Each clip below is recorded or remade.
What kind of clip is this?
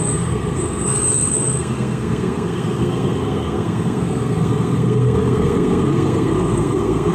remade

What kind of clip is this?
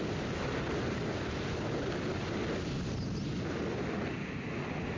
recorded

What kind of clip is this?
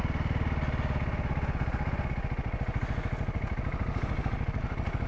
recorded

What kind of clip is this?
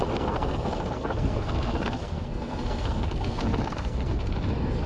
remade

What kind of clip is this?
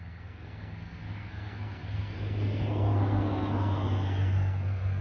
remade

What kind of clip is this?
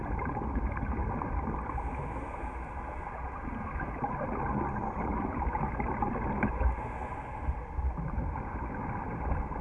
recorded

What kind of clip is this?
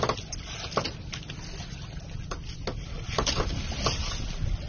recorded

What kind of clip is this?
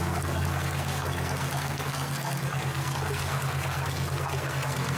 remade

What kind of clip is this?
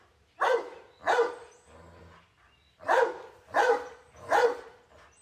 recorded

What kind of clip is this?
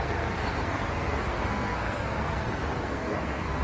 remade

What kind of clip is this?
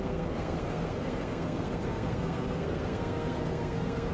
remade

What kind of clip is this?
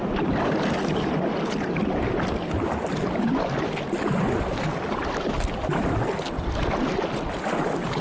recorded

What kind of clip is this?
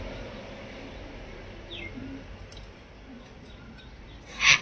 recorded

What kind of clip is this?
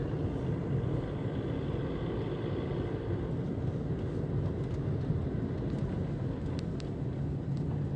recorded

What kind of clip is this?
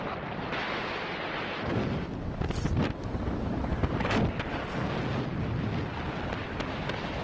recorded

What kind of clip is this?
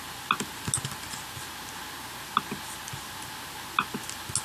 recorded